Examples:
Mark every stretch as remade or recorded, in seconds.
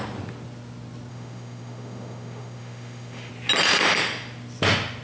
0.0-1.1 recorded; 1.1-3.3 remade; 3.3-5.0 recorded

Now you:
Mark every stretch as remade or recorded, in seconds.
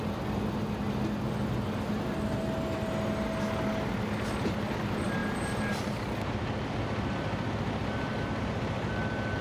0.0-9.4 recorded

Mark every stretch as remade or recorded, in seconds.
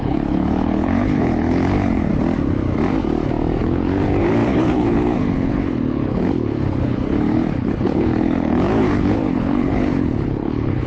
0.0-2.1 remade; 2.1-3.6 recorded; 3.6-10.9 remade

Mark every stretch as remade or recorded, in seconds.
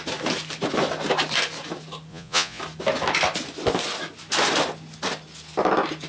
0.0-2.1 recorded; 2.1-2.6 remade; 2.6-6.1 recorded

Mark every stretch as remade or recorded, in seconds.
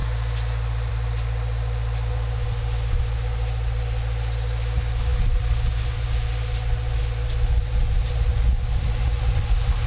0.0-9.9 recorded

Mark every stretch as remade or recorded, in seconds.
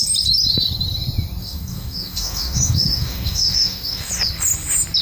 0.0-1.4 recorded; 1.4-4.1 remade; 4.1-5.0 recorded